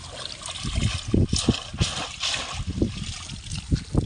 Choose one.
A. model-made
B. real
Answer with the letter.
B